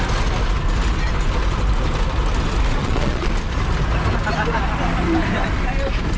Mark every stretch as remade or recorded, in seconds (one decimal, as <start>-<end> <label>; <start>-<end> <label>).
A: 0.0-2.8 recorded; 2.8-3.3 remade; 3.3-6.2 recorded